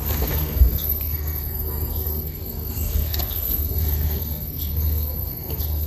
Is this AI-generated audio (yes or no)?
yes